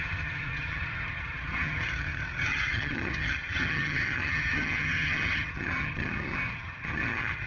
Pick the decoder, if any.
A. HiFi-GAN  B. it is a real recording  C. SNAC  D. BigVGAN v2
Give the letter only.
A